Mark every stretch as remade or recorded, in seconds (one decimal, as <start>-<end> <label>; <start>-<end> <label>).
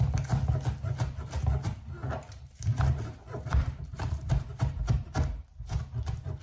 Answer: 0.0-2.0 recorded; 2.0-5.8 remade; 5.8-6.4 recorded